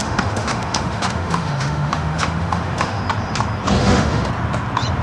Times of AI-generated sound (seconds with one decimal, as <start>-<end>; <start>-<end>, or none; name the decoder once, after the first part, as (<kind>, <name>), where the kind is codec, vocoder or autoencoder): 0.0-3.0 (autoencoder, DAC-VAE); 3.8-4.3